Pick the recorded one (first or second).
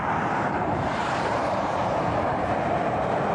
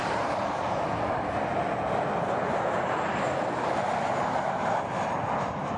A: second